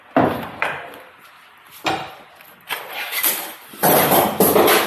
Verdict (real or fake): real